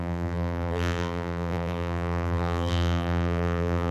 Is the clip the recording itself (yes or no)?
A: no